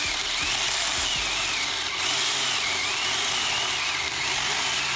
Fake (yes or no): no